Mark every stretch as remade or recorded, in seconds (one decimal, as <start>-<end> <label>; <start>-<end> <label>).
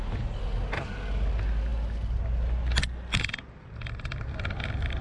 0.0-5.0 recorded